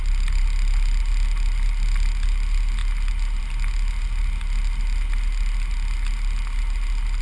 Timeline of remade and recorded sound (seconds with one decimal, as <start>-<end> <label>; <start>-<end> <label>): 0.0-7.2 recorded